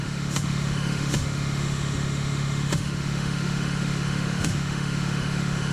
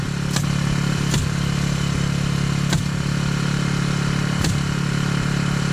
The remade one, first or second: first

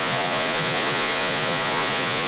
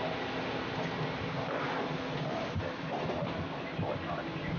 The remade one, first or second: first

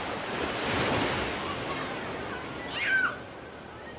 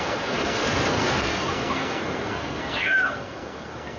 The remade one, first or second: second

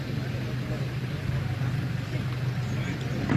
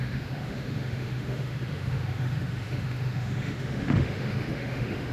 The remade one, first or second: second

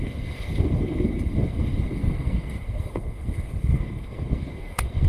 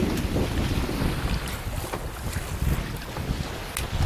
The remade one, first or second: first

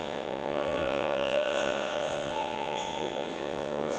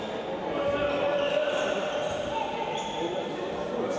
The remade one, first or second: first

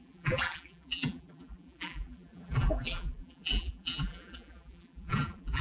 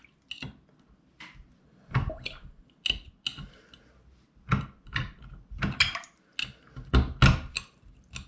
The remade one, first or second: first